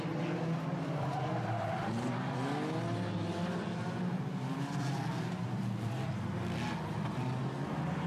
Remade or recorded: recorded